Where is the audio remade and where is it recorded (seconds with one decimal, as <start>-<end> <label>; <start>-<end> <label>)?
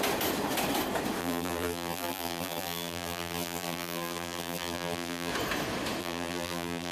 0.0-1.2 recorded; 1.2-5.3 remade; 5.3-6.0 recorded; 6.0-6.9 remade